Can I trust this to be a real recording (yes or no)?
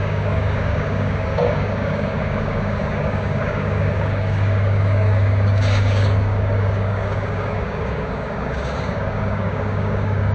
no